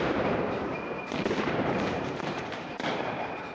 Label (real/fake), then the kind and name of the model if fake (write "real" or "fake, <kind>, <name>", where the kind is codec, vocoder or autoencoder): fake, vocoder, BigVGAN v2